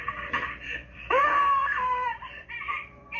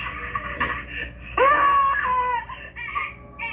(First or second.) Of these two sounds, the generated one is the first